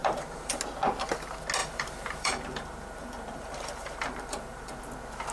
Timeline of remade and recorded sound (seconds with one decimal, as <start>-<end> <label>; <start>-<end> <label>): 0.0-0.6 remade; 0.6-1.6 recorded; 1.6-4.8 remade; 4.8-5.3 recorded